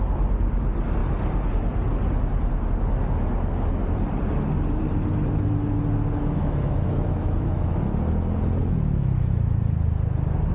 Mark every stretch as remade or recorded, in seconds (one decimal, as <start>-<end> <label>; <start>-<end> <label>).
0.0-6.2 recorded; 6.2-7.8 remade; 7.8-8.6 recorded; 8.6-9.3 remade; 9.3-10.5 recorded

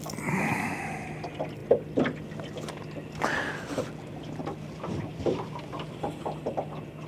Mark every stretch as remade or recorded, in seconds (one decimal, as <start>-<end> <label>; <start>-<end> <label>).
0.0-4.4 recorded; 4.4-5.5 remade; 5.5-7.1 recorded

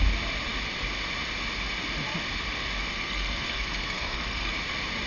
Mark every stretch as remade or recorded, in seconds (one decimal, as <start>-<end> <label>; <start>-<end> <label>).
0.0-2.9 recorded; 2.9-4.5 remade; 4.5-5.1 recorded

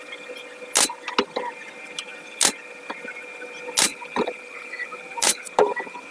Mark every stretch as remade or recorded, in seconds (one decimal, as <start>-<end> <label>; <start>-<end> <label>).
0.0-3.9 recorded; 3.9-6.1 remade

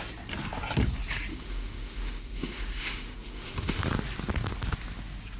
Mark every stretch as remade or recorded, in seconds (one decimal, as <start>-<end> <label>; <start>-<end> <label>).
0.0-1.3 recorded; 1.3-3.8 remade; 3.8-5.4 recorded

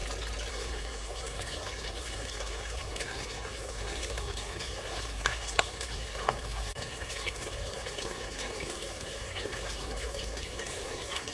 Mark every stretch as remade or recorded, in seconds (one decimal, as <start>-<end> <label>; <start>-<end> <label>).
0.0-0.5 recorded; 0.5-11.3 remade